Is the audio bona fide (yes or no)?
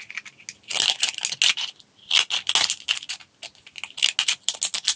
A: yes